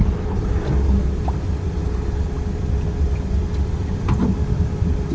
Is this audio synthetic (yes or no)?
no